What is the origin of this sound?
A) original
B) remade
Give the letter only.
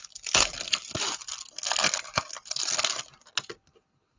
A